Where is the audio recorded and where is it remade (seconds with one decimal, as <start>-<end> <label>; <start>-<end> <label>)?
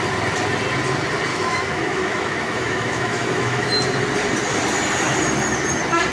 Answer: 0.0-1.3 recorded; 1.3-3.7 remade; 3.7-6.1 recorded